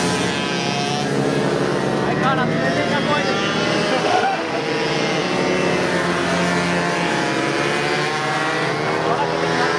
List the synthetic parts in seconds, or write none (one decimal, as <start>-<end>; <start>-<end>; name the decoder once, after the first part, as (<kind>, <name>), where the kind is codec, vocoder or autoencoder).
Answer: 4.0-4.5 (autoencoder, DAC-VAE)